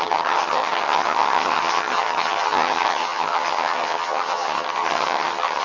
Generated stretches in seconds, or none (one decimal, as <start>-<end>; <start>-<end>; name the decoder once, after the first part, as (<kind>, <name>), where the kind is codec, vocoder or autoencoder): 0.0-5.6 (vocoder, HiFi-GAN)